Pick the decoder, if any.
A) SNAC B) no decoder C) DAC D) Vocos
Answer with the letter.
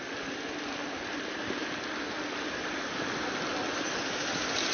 B